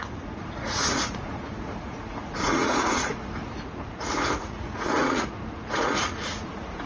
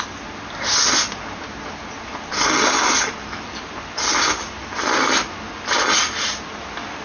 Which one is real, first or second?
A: second